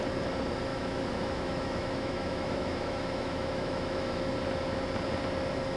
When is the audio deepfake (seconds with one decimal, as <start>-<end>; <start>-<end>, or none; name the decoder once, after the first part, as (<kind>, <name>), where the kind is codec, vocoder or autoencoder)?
0.7-4.2 (autoencoder, DAC-VAE)